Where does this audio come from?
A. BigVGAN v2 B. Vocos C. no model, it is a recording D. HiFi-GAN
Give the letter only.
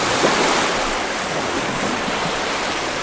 C